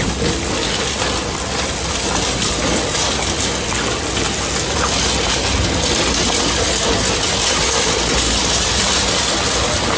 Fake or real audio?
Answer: real